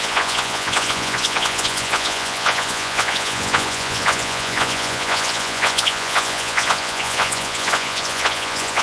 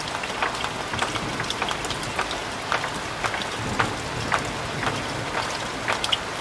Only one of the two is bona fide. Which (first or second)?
second